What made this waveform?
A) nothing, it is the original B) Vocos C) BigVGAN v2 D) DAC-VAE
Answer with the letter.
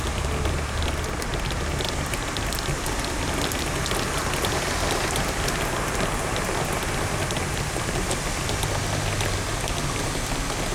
A